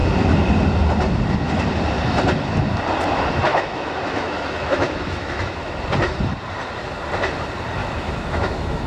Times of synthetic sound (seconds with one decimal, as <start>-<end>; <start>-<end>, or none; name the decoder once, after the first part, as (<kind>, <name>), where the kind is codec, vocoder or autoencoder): 3.5-5.7 (autoencoder, DAC-VAE); 7.8-8.9